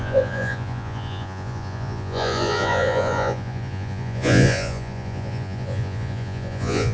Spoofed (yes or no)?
yes